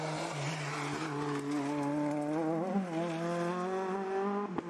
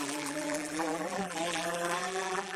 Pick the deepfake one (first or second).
second